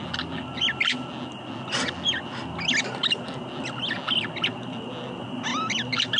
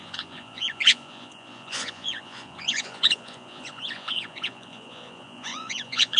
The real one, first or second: first